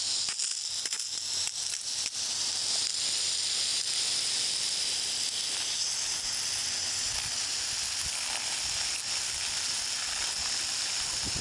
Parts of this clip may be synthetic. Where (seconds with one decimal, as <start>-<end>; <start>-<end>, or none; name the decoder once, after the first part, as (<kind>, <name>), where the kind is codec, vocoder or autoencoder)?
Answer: none